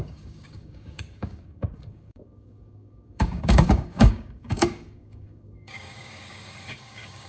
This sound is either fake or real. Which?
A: fake